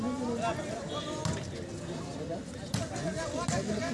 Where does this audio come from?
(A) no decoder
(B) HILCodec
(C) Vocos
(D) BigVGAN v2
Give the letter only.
A